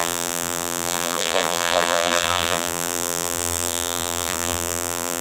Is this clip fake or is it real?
fake